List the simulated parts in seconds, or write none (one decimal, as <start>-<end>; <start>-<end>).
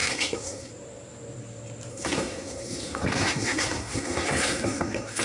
0.0-0.7; 1.9-5.2